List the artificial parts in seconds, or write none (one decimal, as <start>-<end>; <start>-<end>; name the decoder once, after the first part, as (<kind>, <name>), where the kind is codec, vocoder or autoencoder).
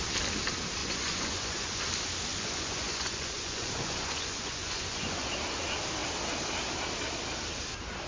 0.8-1.8 (vocoder, Vocos); 2.3-5.3